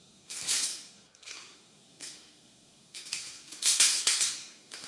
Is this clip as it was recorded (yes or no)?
no